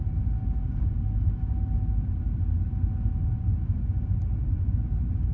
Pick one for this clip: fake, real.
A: real